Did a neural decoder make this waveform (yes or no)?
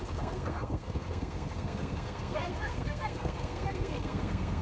yes